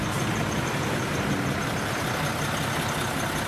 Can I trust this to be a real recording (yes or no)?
yes